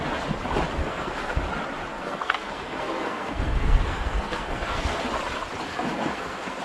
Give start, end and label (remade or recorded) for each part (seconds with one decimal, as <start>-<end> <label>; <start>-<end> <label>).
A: 0.0-0.8 recorded; 0.8-1.4 remade; 1.4-1.9 recorded; 1.9-5.0 remade; 5.0-5.7 recorded; 5.7-6.6 remade